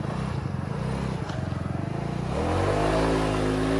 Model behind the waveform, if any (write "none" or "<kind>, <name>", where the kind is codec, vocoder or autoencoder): none